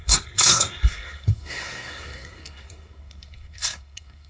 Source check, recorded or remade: remade